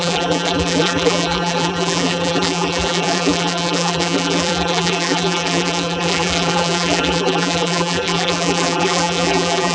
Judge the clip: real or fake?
fake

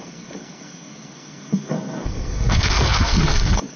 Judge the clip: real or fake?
fake